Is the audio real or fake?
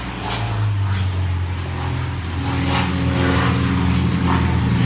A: real